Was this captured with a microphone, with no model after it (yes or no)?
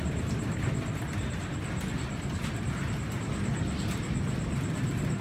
yes